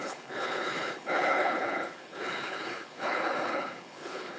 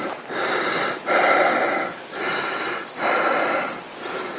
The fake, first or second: first